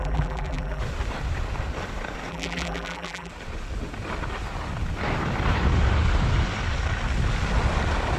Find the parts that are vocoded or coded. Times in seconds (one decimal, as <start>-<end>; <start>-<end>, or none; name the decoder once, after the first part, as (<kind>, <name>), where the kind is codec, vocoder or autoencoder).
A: 0.0-0.8 (vocoder, BigVGAN v2); 2.3-3.3